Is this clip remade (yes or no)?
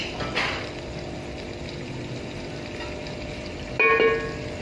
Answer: no